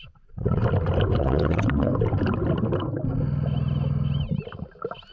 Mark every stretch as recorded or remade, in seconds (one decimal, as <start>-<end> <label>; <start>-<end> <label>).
0.0-0.6 remade; 0.6-1.2 recorded; 1.2-1.9 remade; 1.9-5.1 recorded